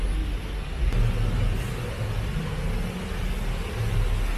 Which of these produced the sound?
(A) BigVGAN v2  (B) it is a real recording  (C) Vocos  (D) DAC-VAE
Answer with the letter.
B